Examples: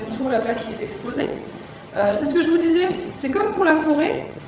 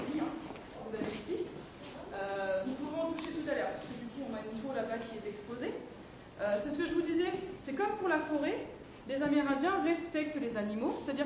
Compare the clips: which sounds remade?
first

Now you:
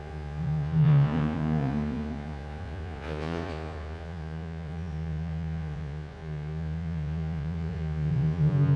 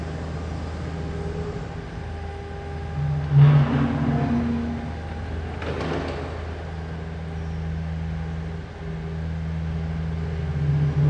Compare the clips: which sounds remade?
first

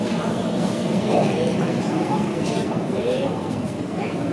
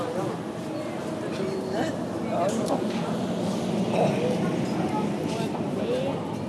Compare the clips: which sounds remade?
first